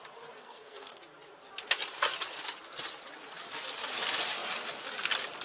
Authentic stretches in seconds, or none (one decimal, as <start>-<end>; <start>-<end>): 0.0-0.4; 1.0-5.4